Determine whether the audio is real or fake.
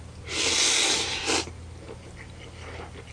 real